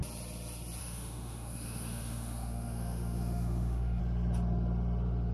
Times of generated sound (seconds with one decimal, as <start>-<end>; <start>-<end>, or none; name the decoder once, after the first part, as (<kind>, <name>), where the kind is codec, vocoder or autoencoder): 0.8-4.0 (autoencoder, DAC-VAE)